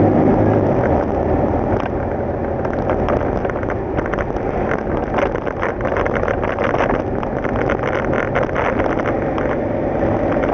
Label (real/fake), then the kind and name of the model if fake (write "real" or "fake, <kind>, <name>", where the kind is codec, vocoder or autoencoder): real